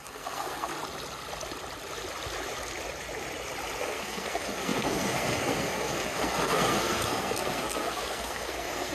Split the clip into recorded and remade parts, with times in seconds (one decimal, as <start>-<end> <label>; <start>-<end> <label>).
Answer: 0.0-0.7 remade; 0.7-3.8 recorded; 3.8-8.9 remade